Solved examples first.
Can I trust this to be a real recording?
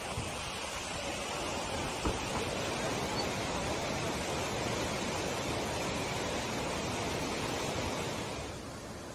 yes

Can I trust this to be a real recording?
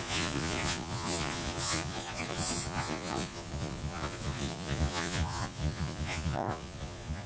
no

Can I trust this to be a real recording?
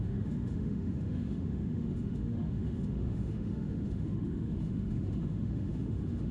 no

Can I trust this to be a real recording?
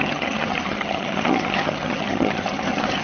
no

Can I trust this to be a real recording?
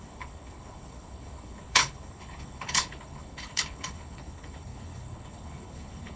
no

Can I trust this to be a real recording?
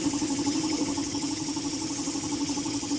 no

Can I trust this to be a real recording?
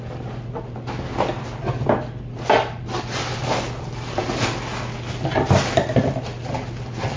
yes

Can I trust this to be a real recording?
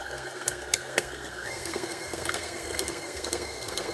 no